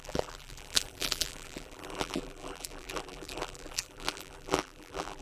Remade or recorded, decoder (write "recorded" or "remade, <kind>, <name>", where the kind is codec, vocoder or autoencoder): remade, vocoder, BigVGAN v2